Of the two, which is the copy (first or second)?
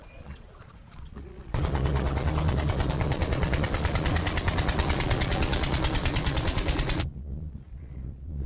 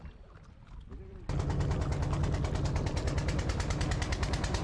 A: first